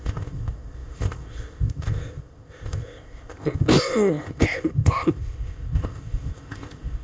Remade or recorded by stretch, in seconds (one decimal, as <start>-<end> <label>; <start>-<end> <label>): 0.0-7.0 remade